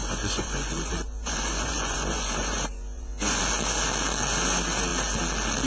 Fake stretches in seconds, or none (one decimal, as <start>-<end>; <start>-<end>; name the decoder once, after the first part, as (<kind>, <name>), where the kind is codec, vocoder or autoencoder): 0.0-3.4 (vocoder, Vocos)